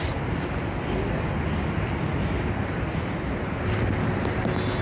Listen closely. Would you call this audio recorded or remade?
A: recorded